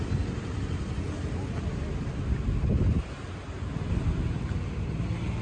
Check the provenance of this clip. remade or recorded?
recorded